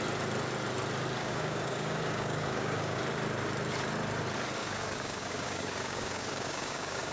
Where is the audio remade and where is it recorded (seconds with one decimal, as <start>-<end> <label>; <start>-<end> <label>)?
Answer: 0.0-1.2 recorded; 1.2-3.0 remade; 3.0-4.6 recorded; 4.6-7.1 remade